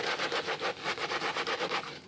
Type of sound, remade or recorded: recorded